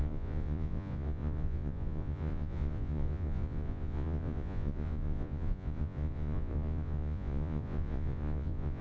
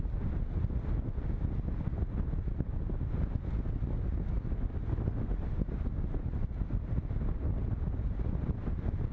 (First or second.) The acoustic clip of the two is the second